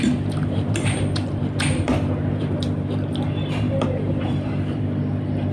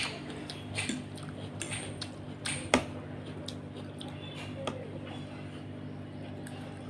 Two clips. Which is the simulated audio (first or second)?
first